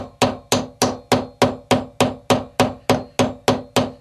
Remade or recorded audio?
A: recorded